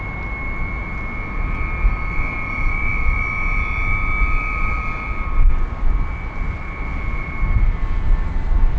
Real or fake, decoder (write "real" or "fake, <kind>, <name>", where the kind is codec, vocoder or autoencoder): real